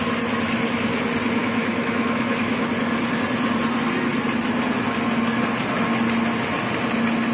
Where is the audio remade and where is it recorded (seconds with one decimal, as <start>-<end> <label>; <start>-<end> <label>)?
0.0-1.4 recorded; 1.4-2.7 remade; 2.7-7.3 recorded